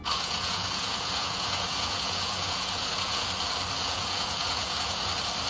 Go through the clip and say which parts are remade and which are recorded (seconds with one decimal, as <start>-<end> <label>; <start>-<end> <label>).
0.0-3.3 remade; 3.3-3.8 recorded; 3.8-5.1 remade; 5.1-5.5 recorded